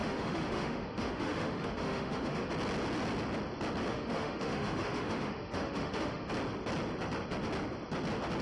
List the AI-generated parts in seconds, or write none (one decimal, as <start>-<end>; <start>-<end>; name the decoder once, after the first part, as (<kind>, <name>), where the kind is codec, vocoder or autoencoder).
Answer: 0.0-2.5 (autoencoder, DAC-VAE); 3.9-6.3